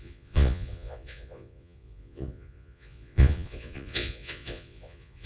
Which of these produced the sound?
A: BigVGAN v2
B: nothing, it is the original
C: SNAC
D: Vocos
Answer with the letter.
D